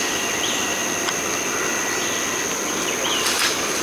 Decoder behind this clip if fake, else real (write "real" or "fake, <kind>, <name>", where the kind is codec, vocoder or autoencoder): real